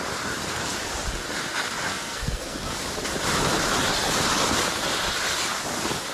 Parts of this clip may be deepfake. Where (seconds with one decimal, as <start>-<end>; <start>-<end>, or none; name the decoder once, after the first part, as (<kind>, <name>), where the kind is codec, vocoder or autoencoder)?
1.9-2.8 (codec, SNAC)